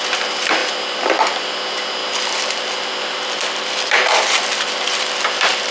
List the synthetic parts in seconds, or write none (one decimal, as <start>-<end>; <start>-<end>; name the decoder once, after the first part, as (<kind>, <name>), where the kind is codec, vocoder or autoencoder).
0.6-1.5 (vocoder, BigVGAN v2); 2.0-5.7